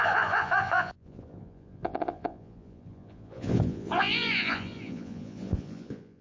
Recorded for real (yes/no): no